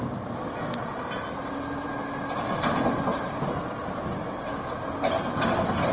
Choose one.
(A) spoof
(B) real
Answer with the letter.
B